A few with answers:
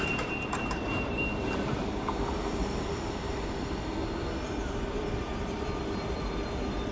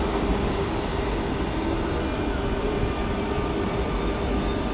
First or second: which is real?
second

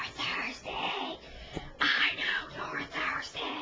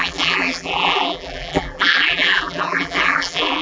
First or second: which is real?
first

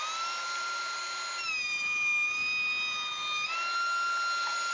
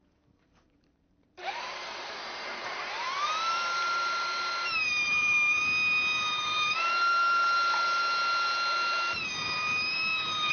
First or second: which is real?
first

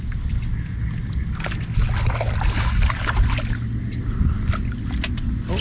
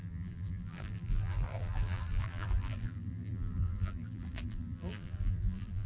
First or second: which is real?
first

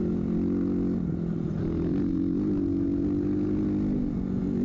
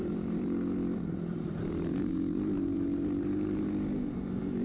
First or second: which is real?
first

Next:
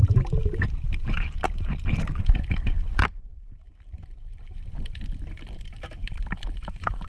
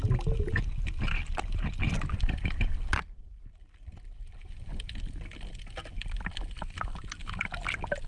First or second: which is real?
second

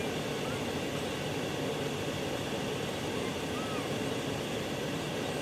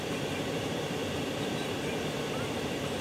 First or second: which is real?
first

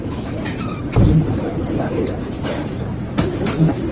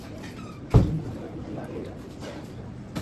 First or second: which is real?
second